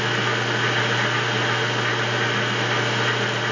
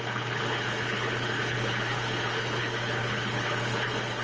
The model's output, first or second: second